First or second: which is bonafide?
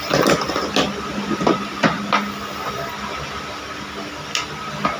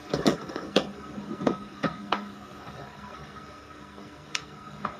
first